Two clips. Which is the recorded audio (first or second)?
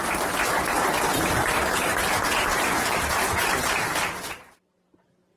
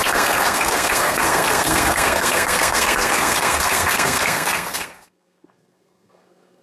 first